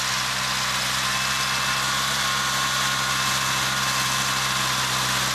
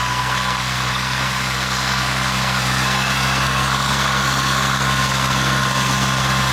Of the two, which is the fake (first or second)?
second